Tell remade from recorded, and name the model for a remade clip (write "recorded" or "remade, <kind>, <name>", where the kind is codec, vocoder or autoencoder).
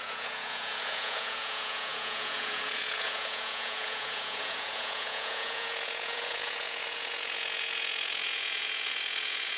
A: remade, vocoder, Vocos